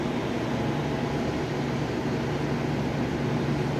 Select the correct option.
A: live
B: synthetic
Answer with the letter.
A